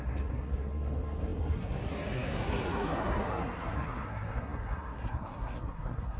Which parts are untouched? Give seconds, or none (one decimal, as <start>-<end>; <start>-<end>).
none